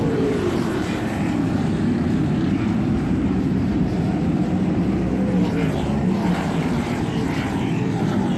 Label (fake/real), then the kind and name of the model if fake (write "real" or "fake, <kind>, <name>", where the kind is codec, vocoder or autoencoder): fake, vocoder, BigVGAN v2